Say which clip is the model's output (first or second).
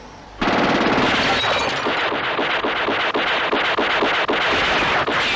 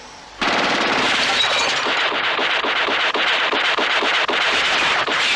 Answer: second